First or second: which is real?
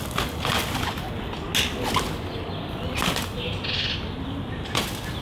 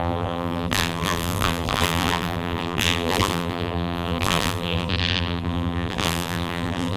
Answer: first